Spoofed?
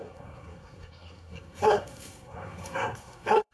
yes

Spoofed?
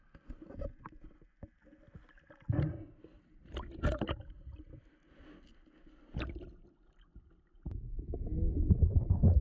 no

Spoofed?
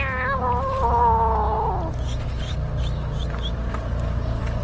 no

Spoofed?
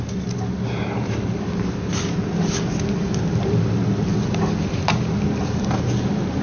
no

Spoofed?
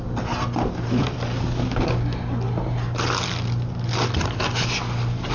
no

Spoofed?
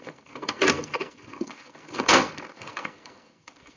yes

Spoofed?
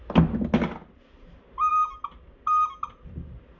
no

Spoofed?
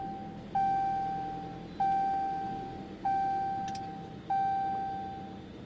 no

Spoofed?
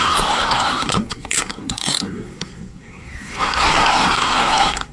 yes